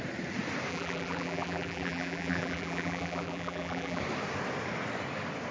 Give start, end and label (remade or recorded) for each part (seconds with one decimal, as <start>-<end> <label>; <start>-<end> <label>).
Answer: 0.0-0.7 recorded; 0.7-4.0 remade; 4.0-5.5 recorded